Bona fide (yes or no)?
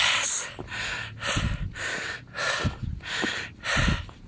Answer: yes